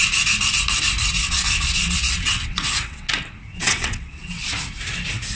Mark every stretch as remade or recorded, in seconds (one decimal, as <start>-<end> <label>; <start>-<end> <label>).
0.0-1.2 recorded; 1.2-3.1 remade; 3.1-3.5 recorded; 3.5-4.5 remade; 4.5-5.4 recorded

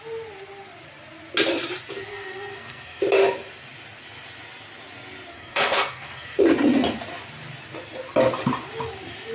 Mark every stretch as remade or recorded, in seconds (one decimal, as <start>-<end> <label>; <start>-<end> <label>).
0.0-2.1 recorded; 2.1-3.0 remade; 3.0-5.3 recorded; 5.3-6.4 remade; 6.4-9.3 recorded

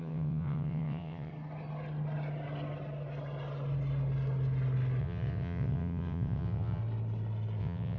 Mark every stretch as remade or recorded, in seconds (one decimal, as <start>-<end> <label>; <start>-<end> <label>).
0.0-1.3 remade; 1.3-5.0 recorded; 5.0-6.8 remade; 6.8-7.6 recorded; 7.6-8.0 remade

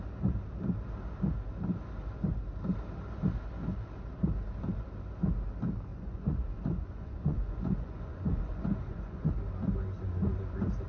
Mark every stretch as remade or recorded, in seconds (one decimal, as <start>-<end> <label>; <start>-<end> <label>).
0.0-5.9 recorded; 5.9-9.3 remade; 9.3-10.9 recorded

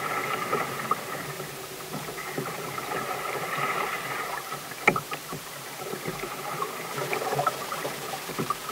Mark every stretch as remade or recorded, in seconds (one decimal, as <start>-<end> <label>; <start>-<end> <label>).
0.0-8.7 remade

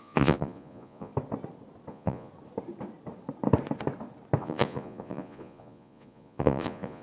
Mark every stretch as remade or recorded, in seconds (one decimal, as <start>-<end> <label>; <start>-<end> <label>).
0.0-1.1 remade; 1.1-1.9 recorded; 1.9-2.3 remade; 2.3-4.4 recorded; 4.4-7.0 remade